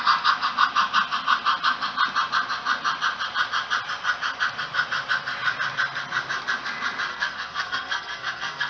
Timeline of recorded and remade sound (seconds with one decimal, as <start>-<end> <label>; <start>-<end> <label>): 0.0-7.1 recorded; 7.1-8.7 remade

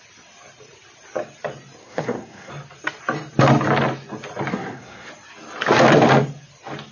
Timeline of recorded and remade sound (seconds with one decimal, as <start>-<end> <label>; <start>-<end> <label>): 0.0-1.8 recorded; 1.8-2.5 remade; 2.5-4.5 recorded; 4.5-5.1 remade; 5.1-6.9 recorded

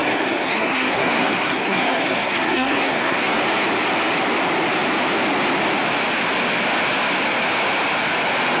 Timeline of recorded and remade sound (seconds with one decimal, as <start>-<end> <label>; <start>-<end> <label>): 0.0-3.4 remade; 3.4-8.6 recorded

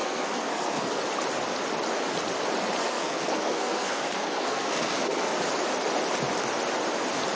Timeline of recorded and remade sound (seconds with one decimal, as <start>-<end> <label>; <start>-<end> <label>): 0.0-1.0 remade; 1.0-2.8 recorded; 2.8-5.3 remade; 5.3-7.4 recorded

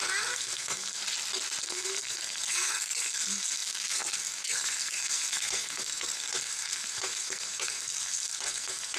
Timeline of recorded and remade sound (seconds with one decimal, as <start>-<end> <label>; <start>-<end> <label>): 0.0-1.0 remade; 1.0-1.6 recorded; 1.6-9.0 remade

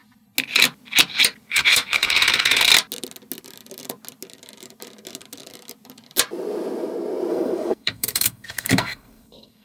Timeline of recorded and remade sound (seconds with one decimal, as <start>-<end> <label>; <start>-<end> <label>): 0.0-1.5 recorded; 1.5-2.7 remade; 2.7-7.3 recorded; 7.3-9.6 remade